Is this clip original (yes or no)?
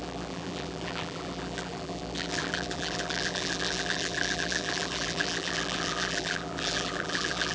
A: no